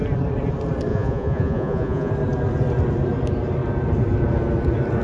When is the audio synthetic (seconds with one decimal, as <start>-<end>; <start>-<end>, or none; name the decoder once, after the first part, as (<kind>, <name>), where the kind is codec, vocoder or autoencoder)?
0.9-2.1 (vocoder, Vocos)